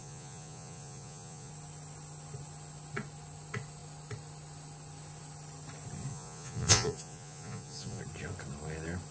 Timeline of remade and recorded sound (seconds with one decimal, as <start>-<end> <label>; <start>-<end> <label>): 0.0-1.5 remade; 1.5-6.1 recorded; 6.1-8.0 remade; 8.0-9.1 recorded